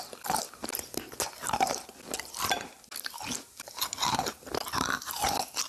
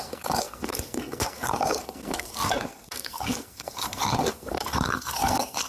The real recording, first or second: first